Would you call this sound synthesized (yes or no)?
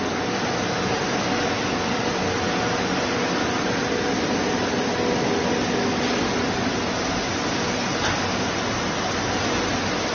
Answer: no